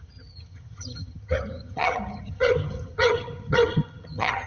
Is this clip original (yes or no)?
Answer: no